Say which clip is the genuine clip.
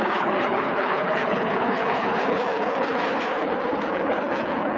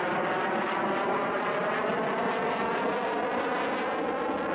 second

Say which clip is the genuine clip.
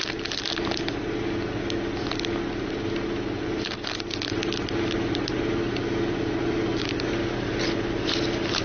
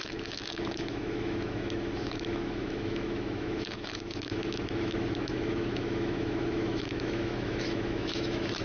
first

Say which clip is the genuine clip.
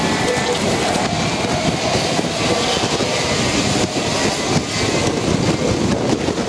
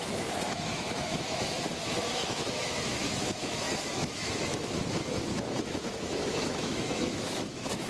first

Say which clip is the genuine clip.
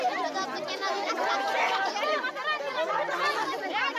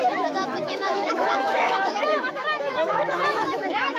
first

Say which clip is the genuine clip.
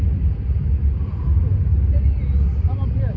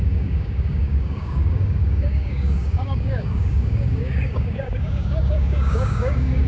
first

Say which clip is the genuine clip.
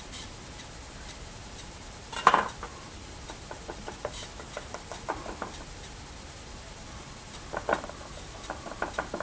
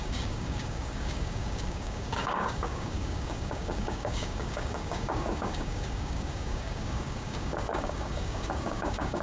first